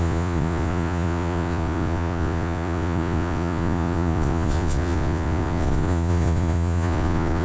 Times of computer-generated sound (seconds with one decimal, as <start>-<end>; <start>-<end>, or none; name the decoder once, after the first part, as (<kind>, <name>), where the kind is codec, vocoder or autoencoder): 0.0-7.4 (vocoder, Vocos)